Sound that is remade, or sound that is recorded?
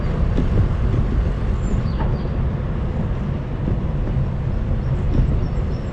recorded